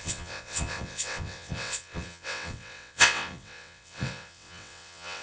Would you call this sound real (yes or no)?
no